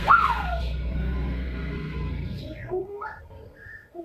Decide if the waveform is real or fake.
fake